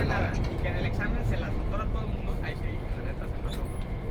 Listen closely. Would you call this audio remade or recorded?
remade